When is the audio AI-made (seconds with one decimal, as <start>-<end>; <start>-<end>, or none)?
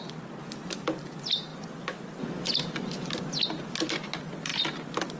none